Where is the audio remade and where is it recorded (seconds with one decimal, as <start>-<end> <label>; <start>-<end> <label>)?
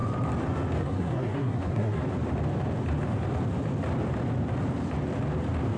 0.0-0.8 recorded; 0.8-2.0 remade; 2.0-5.8 recorded